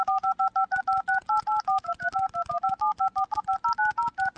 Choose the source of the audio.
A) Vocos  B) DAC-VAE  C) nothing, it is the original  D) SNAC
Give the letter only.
C